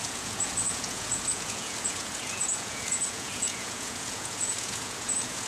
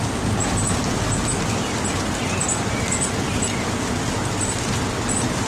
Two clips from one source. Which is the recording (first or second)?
second